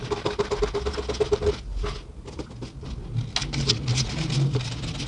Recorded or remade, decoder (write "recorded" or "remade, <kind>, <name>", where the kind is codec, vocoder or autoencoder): recorded